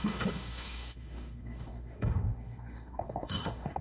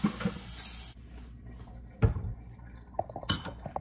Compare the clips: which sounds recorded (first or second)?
second